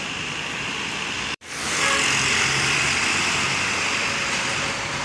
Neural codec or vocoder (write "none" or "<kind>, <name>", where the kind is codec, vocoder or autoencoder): vocoder, BigVGAN v2